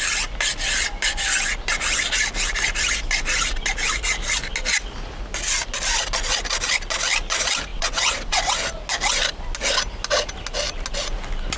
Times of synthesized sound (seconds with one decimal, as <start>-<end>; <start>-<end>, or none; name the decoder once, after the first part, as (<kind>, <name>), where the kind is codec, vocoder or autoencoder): 7.7-8.4 (vocoder, WaveNeXt)